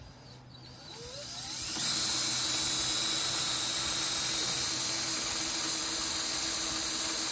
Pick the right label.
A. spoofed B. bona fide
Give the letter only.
B